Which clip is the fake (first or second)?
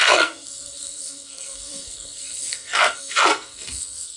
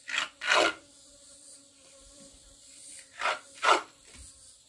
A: first